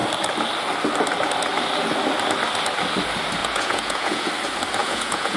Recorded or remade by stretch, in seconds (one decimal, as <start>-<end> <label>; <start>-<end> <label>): 0.0-3.4 recorded; 3.4-4.3 remade; 4.3-4.8 recorded; 4.8-5.4 remade